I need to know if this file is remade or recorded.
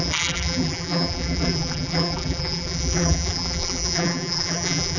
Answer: remade